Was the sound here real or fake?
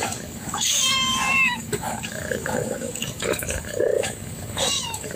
fake